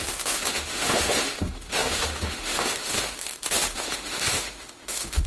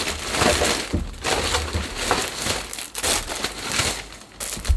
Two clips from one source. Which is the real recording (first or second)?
second